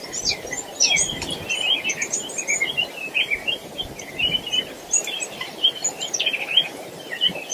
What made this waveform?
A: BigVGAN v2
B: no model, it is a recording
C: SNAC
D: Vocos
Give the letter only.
A